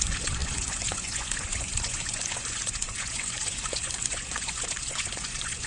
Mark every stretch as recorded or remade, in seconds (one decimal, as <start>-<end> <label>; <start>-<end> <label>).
0.0-5.7 remade